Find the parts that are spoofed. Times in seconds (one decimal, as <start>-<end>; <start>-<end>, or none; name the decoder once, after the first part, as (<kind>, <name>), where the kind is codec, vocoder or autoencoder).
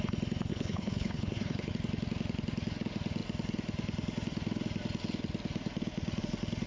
0.5-1.7 (codec, HILCodec)